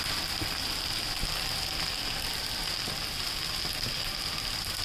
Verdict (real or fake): real